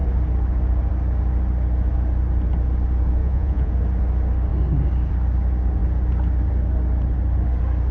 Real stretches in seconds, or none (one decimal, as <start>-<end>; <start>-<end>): 0.0-3.2; 3.7-7.9